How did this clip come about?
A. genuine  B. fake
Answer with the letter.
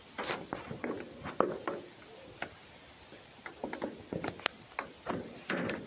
A